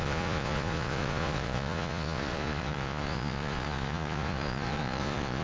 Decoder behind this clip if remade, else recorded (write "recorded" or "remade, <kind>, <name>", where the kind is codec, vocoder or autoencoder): remade, vocoder, Vocos